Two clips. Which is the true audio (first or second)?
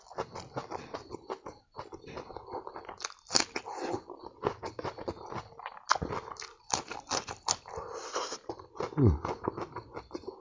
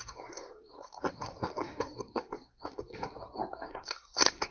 first